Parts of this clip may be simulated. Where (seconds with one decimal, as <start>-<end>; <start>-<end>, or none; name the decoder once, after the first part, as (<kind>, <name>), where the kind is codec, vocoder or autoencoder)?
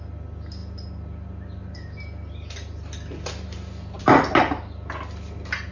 none